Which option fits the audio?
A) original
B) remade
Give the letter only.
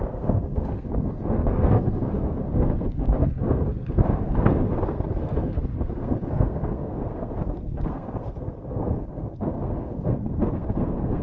B